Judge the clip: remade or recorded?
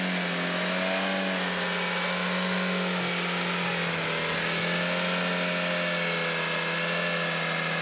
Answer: recorded